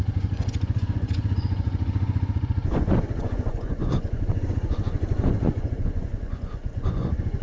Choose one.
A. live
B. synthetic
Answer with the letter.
B